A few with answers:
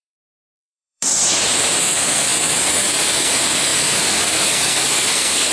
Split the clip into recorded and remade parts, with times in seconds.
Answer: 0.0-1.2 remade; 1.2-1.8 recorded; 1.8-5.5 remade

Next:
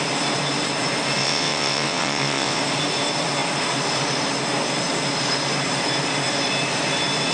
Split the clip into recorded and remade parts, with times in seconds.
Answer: 0.0-1.2 recorded; 1.2-2.6 remade; 2.6-7.3 recorded